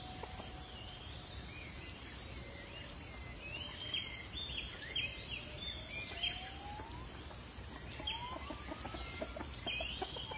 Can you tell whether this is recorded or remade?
recorded